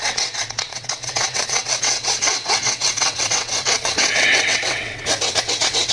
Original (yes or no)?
no